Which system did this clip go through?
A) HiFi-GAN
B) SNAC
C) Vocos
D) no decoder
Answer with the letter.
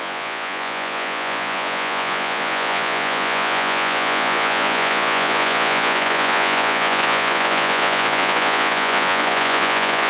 C